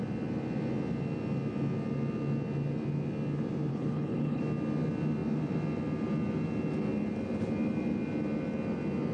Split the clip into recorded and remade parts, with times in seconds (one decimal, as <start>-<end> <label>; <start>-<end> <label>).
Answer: 0.0-3.7 recorded; 3.7-4.4 remade; 4.4-9.1 recorded